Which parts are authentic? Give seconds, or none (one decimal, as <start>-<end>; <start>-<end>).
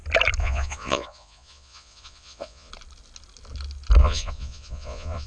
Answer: 0.0-0.4; 2.7-4.0